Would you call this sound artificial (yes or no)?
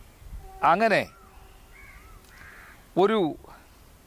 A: no